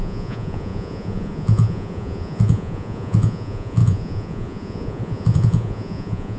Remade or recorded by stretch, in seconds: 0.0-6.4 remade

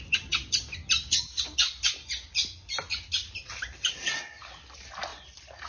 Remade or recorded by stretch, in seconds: 0.0-5.7 recorded

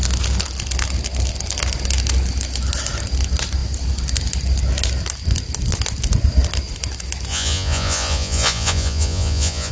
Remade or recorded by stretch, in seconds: 0.0-7.3 recorded; 7.3-9.7 remade

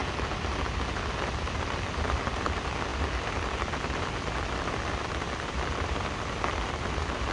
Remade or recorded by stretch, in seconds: 0.0-7.3 recorded

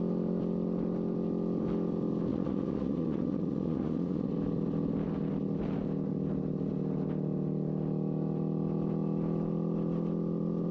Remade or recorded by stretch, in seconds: 0.0-2.3 recorded; 2.3-4.3 remade; 4.3-10.7 recorded

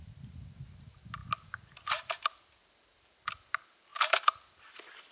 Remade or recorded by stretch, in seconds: 0.0-5.1 recorded

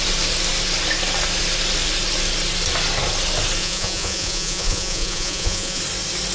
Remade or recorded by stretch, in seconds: 0.0-3.6 recorded; 3.6-5.8 remade; 5.8-6.3 recorded